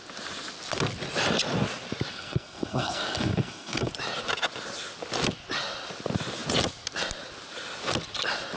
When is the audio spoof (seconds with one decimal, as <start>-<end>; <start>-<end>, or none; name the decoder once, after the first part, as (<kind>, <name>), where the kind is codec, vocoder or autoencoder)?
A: 2.1-3.9 (codec, SNAC)